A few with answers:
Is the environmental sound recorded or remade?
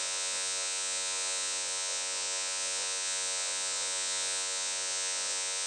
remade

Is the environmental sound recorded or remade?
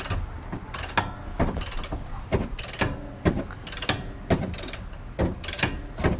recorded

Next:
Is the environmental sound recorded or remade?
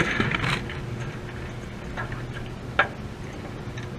recorded